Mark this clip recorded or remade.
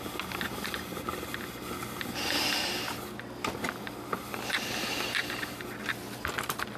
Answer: recorded